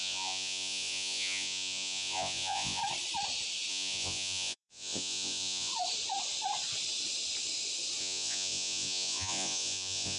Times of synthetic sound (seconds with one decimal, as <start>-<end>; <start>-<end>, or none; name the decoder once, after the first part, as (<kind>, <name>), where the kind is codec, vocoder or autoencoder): 0.0-2.8 (vocoder, Vocos); 3.7-5.7; 8.0-10.2